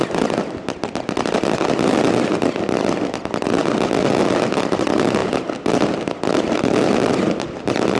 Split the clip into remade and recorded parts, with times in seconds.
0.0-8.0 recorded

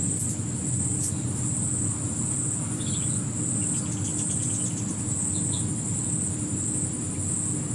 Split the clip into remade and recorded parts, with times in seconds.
0.0-7.7 recorded

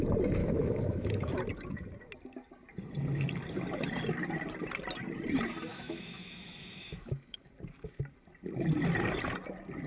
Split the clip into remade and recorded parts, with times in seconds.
0.0-0.4 recorded; 0.4-1.3 remade; 1.3-5.7 recorded; 5.7-7.5 remade; 7.5-9.9 recorded

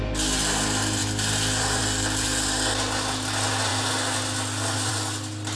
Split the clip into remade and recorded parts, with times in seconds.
0.0-5.6 recorded

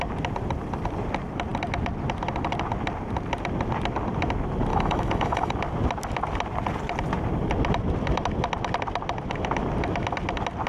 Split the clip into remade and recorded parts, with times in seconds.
0.0-4.7 recorded; 4.7-5.5 remade; 5.5-10.7 recorded

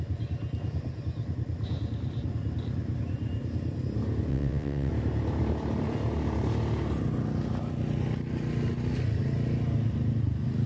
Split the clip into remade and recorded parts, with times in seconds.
0.0-4.3 recorded; 4.3-4.9 remade; 4.9-10.7 recorded

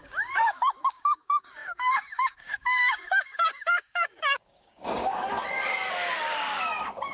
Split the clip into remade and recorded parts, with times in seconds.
0.0-7.1 remade

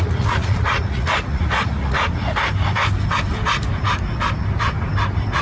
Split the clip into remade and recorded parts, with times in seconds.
0.0-2.2 remade; 2.2-5.4 recorded